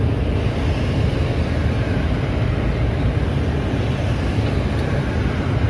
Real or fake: real